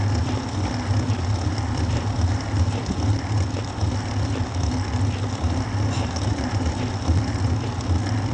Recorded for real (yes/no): yes